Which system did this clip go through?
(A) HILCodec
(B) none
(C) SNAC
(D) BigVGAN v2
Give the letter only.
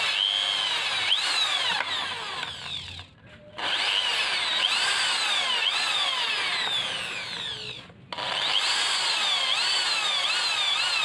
B